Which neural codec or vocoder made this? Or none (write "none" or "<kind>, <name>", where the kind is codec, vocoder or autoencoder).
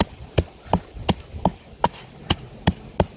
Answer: none